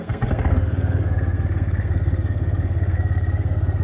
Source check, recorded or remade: remade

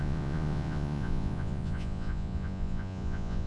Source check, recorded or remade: remade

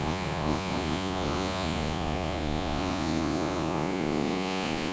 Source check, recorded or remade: remade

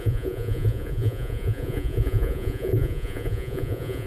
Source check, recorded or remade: remade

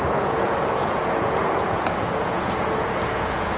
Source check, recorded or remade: remade